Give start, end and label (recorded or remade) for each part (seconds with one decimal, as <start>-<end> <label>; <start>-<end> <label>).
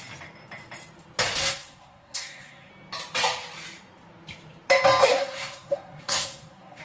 0.0-1.4 recorded; 1.4-2.7 remade; 2.7-5.0 recorded; 5.0-6.8 remade